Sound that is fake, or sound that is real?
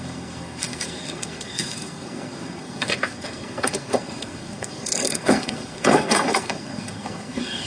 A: fake